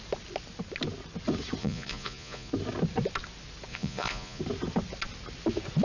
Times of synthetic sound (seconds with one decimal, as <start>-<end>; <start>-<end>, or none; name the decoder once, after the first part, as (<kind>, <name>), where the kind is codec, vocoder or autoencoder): 1.6-2.5 (vocoder, Vocos); 3.7-4.4